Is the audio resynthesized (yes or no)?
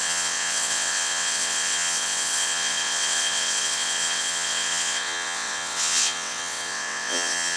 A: yes